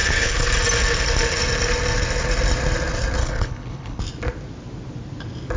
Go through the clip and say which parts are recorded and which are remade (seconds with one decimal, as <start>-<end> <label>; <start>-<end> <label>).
0.0-0.5 remade; 0.5-3.2 recorded; 3.2-4.0 remade; 4.0-5.6 recorded

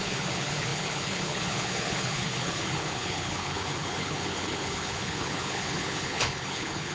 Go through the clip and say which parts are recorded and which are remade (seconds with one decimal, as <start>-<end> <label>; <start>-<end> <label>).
0.0-6.9 remade

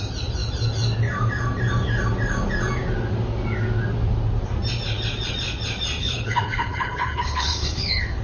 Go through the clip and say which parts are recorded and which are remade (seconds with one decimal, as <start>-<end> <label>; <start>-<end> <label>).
0.0-6.0 recorded; 6.0-8.2 remade

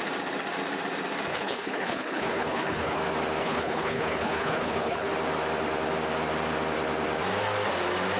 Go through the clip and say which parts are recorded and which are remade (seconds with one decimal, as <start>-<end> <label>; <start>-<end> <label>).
0.0-1.3 recorded; 1.3-3.0 remade; 3.0-3.4 recorded; 3.4-5.1 remade; 5.1-8.2 recorded

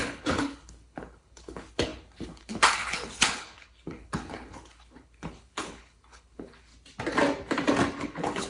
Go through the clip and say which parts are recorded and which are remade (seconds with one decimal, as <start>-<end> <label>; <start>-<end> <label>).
0.0-6.7 remade; 6.7-8.0 recorded; 8.0-8.5 remade